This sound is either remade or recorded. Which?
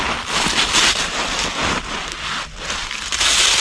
recorded